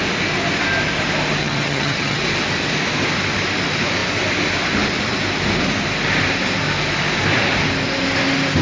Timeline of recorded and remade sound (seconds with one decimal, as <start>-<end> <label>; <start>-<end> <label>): 0.0-1.4 recorded; 1.4-2.2 remade; 2.2-8.6 recorded